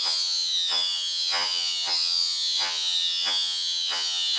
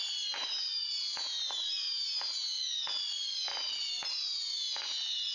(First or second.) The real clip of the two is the second